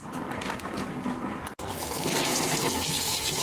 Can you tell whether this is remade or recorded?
remade